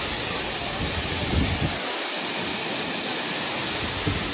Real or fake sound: real